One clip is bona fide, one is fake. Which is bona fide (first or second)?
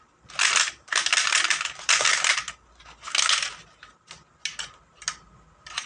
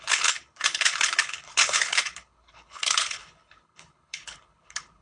first